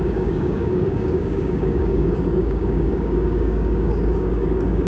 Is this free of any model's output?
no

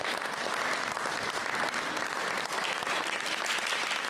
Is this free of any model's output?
yes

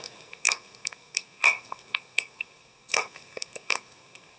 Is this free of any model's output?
no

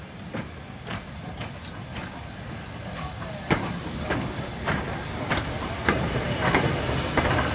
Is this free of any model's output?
yes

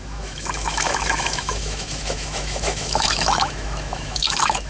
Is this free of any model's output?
no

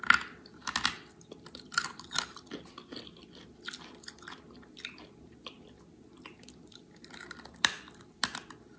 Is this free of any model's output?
yes